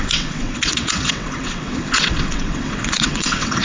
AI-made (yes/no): yes